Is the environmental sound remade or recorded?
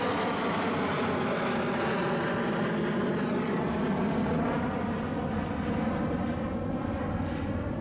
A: recorded